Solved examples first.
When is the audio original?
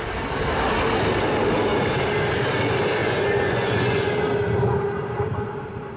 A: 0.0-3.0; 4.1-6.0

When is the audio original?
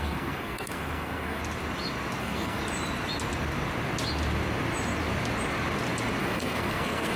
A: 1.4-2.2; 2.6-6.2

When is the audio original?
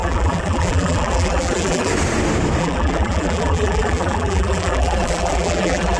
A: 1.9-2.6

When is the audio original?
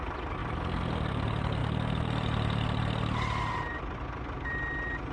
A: 0.0-5.1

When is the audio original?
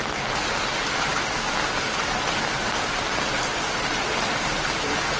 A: 0.0-5.2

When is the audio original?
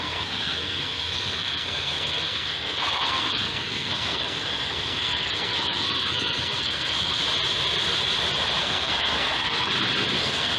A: 7.2-8.6; 9.7-10.2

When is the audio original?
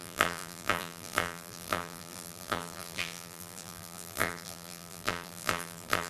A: none